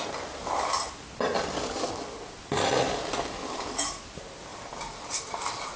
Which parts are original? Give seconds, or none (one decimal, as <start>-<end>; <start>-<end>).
0.0-4.5; 5.2-5.8